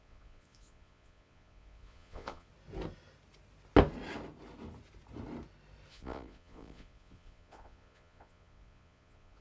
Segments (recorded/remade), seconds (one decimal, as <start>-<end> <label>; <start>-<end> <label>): 0.0-2.5 remade; 2.5-5.9 recorded; 5.9-9.4 remade